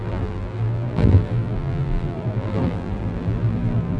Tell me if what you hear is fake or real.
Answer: fake